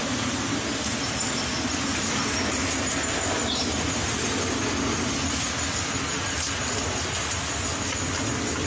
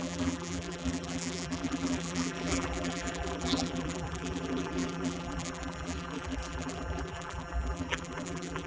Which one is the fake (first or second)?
second